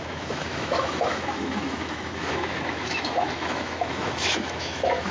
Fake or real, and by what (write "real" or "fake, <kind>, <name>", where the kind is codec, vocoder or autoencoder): fake, autoencoder, DAC-VAE